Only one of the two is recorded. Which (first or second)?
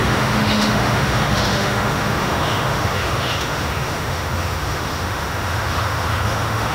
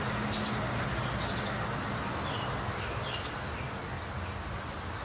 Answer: second